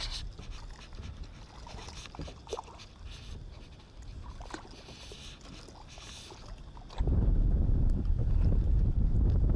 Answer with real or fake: real